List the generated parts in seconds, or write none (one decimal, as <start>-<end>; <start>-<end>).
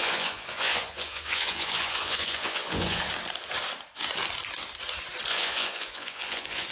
0.0-3.0; 5.3-6.7